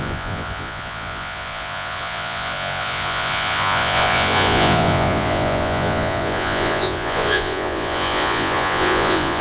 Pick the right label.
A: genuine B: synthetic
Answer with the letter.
B